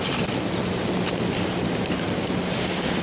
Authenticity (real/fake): real